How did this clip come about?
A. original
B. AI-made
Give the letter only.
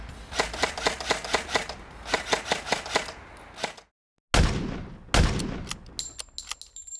A